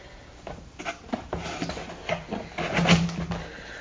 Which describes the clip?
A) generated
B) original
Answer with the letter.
B